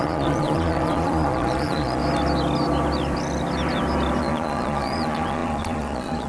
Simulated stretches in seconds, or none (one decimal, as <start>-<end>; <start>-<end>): 0.0-2.0; 4.2-6.3